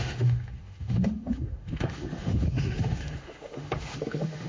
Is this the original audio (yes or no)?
no